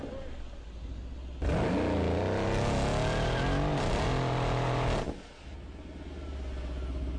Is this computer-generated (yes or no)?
no